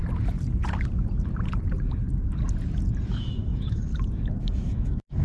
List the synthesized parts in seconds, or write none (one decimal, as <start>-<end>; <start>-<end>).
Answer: 3.1-3.9; 4.4-5.2

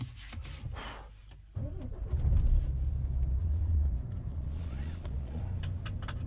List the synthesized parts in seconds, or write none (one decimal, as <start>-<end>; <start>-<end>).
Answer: 3.4-3.9; 4.3-5.4

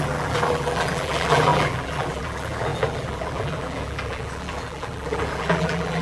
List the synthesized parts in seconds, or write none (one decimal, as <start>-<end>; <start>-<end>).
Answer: 0.0-6.0

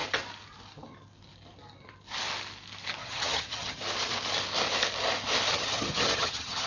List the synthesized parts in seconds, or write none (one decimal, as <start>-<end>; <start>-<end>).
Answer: 3.0-3.8; 5.5-6.7

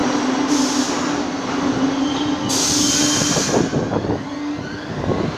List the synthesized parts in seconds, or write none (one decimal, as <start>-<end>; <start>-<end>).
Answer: none

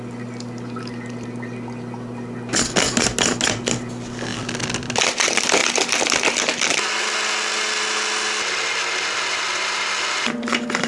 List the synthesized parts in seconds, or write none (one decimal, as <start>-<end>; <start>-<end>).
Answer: 4.3-4.9

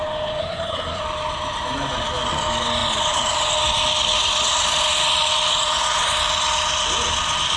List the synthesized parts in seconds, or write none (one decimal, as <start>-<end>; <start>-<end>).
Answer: 0.4-1.0